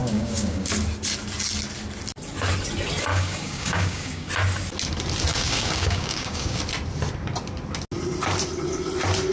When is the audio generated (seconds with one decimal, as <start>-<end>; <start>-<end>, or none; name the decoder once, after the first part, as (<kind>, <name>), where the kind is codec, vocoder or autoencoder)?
0.0-0.7 (codec, DAC); 3.1-4.3; 5.3-6.6